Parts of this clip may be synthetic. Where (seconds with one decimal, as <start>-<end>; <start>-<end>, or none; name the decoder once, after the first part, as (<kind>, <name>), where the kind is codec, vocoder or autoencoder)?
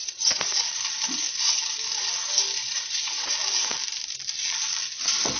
0.0-0.6 (vocoder, Vocos); 2.6-3.3